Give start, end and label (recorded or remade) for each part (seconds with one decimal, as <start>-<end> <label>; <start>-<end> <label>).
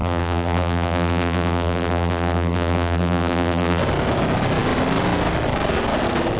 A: 0.0-3.8 remade; 3.8-6.4 recorded